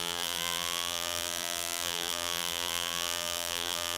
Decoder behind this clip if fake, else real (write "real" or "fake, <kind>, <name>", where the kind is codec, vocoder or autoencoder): fake, vocoder, BigVGAN v2